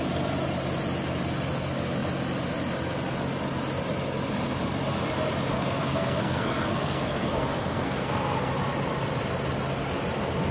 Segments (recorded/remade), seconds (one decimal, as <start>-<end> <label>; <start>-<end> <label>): 0.0-5.5 recorded; 5.5-8.5 remade; 8.5-10.5 recorded